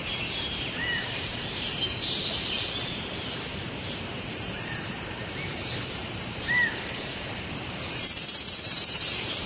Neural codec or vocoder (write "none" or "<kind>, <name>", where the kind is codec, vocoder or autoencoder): vocoder, BigVGAN v2